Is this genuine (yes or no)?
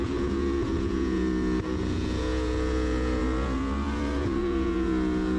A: no